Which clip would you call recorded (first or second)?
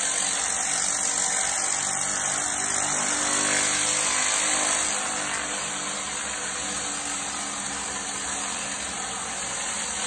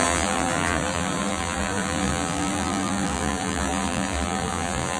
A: first